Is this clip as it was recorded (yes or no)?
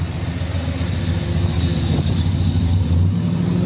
yes